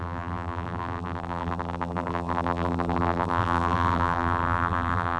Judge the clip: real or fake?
fake